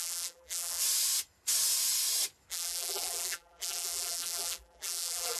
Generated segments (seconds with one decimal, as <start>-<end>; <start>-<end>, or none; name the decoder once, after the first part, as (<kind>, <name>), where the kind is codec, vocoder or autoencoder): 0.0-0.8 (vocoder, BigVGAN v2); 2.5-5.4